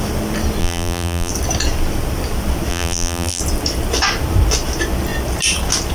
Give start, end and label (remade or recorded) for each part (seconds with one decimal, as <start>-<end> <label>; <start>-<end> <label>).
0.0-0.6 recorded; 0.6-1.3 remade; 1.3-2.7 recorded; 2.7-3.4 remade; 3.4-5.9 recorded